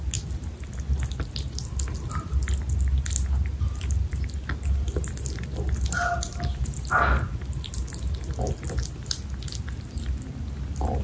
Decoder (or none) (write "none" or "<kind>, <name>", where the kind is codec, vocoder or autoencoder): none